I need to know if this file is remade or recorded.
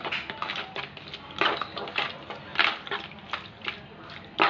recorded